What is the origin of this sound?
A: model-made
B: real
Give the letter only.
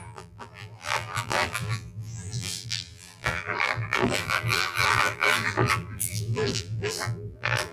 A